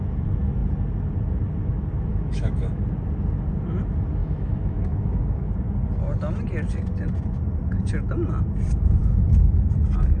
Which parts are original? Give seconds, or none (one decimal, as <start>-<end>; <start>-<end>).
0.0-2.1; 2.8-4.2; 5.5-9.0; 9.6-10.2